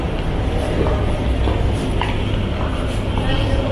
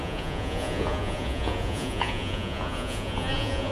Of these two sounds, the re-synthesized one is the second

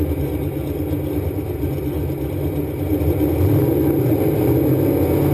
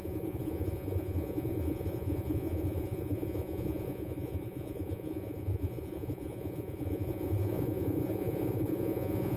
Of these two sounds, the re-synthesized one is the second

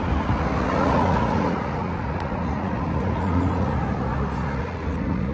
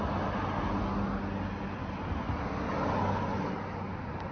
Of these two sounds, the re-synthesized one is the first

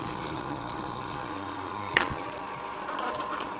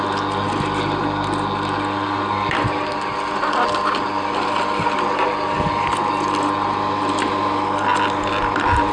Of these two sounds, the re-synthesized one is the first